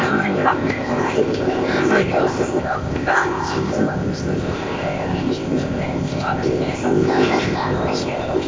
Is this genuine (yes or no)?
no